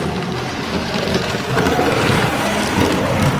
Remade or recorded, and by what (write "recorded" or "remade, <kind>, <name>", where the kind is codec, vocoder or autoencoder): remade, vocoder, BigVGAN v2